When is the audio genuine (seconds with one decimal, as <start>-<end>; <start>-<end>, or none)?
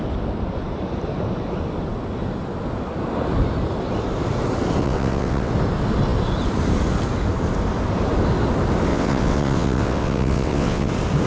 0.0-4.8; 5.5-8.9; 10.9-11.3